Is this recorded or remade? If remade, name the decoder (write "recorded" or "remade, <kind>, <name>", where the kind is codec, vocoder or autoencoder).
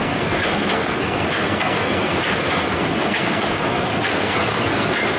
remade, codec, SNAC